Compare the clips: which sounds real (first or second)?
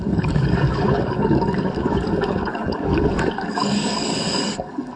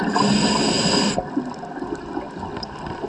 second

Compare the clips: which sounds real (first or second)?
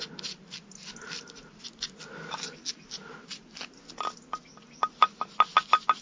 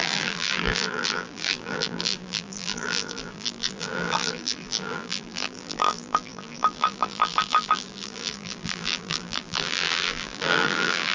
first